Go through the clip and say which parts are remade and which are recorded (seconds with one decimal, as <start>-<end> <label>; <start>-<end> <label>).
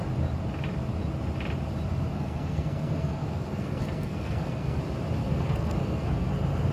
0.0-2.1 recorded; 2.1-4.8 remade; 4.8-5.2 recorded; 5.2-6.3 remade; 6.3-6.7 recorded